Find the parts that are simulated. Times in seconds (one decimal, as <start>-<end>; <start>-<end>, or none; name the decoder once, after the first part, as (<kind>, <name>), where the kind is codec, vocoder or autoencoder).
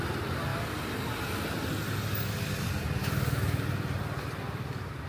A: 3.0-3.6 (autoencoder, DAC-VAE)